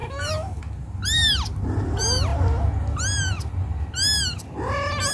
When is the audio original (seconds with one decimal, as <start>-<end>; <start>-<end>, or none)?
0.6-5.1